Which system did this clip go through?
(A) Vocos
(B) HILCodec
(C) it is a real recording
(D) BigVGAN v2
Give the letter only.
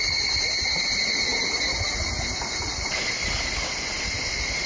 C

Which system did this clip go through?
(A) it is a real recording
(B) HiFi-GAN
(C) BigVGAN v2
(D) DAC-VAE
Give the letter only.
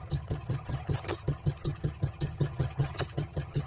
B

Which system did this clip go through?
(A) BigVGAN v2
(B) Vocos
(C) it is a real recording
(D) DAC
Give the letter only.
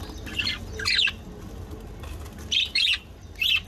C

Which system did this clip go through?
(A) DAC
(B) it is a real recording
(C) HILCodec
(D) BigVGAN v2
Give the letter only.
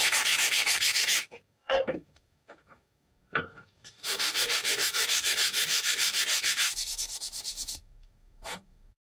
A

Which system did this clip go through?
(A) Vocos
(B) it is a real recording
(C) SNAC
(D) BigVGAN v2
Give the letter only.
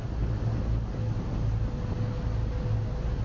B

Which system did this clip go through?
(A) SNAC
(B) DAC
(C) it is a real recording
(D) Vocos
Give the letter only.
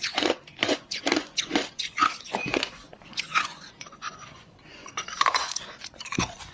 D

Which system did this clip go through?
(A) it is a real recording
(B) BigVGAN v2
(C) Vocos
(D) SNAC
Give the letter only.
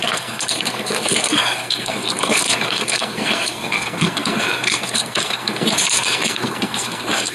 D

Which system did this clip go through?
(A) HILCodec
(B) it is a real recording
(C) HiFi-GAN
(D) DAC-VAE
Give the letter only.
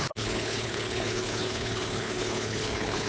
A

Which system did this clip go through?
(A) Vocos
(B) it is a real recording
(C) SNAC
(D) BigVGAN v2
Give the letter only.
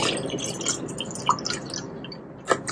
B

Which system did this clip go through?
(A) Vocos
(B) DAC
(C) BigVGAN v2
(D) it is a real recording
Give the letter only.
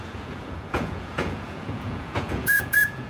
A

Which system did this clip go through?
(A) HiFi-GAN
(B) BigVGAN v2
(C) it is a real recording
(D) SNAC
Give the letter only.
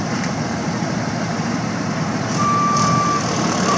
B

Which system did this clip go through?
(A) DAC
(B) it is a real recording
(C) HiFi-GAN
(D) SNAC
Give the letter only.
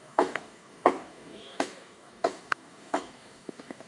A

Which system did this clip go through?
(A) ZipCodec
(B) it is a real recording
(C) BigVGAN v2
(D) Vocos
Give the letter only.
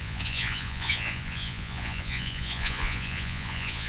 D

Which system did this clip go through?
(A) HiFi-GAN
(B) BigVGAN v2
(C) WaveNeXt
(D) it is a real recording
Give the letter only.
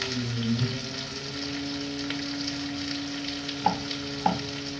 D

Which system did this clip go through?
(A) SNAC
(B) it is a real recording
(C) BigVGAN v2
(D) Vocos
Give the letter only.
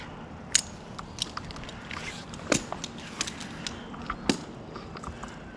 B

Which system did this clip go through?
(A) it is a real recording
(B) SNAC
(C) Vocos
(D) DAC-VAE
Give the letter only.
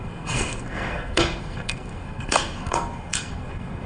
B